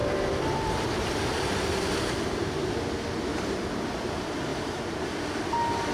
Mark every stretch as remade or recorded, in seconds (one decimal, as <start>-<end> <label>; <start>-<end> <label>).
0.0-1.1 remade; 1.1-3.3 recorded; 3.3-3.8 remade; 3.8-4.5 recorded; 4.5-5.2 remade; 5.2-5.9 recorded